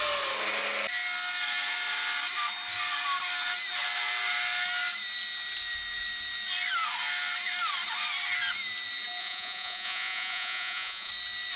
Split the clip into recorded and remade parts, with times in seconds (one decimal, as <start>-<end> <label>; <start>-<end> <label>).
0.0-9.2 recorded; 9.2-11.1 remade; 11.1-11.6 recorded